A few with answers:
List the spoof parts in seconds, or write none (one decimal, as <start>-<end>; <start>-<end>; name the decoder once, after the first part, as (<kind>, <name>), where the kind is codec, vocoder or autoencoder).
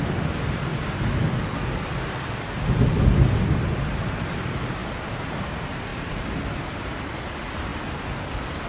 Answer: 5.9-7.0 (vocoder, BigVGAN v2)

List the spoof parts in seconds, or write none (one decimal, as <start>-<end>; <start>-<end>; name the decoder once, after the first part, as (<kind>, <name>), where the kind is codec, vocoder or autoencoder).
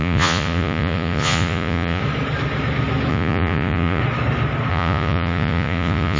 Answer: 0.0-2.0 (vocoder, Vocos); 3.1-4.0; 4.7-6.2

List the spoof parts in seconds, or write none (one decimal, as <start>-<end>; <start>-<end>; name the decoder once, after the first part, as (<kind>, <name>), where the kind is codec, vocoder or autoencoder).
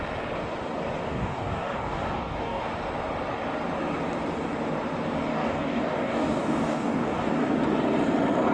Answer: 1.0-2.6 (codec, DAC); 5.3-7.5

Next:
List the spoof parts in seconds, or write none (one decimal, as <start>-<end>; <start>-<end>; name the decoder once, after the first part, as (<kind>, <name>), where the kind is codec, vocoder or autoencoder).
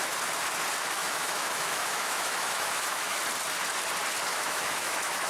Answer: 1.0-3.2 (autoencoder, DAC-VAE); 4.3-5.3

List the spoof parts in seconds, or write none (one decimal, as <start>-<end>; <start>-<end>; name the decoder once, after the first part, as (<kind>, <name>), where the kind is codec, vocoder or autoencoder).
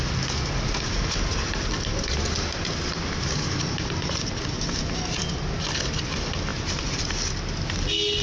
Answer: 6.5-7.1 (vocoder, BigVGAN v2)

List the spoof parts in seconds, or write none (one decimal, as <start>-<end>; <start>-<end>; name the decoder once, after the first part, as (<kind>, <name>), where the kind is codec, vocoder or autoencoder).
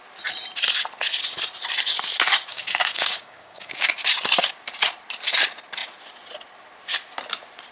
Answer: 2.5-3.9 (codec, DAC)